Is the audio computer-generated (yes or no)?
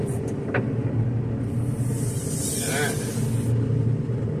no